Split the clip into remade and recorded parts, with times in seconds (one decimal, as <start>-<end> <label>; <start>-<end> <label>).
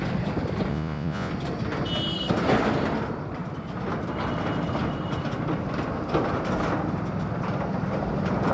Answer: 0.0-0.7 recorded; 0.7-1.3 remade; 1.3-8.5 recorded